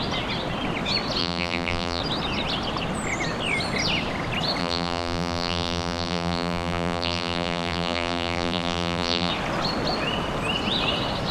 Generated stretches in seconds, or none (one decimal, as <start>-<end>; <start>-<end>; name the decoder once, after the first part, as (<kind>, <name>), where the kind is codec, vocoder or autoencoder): 1.2-2.0 (vocoder, BigVGAN v2); 4.6-9.3